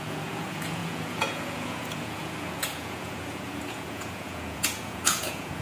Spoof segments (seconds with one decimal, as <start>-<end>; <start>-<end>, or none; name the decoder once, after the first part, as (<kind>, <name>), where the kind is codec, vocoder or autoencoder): 0.0-5.6 (vocoder, Vocos)